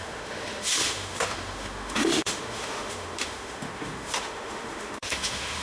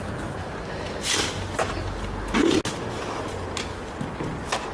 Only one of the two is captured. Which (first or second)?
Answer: second